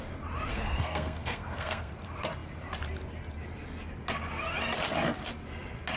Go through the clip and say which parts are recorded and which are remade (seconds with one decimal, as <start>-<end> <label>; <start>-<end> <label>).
0.0-0.5 recorded; 0.5-1.9 remade; 1.9-6.0 recorded